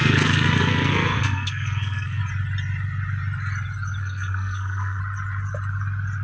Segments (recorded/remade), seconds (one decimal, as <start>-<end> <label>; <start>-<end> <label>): 0.0-2.2 remade; 2.2-4.0 recorded; 4.0-5.0 remade; 5.0-6.2 recorded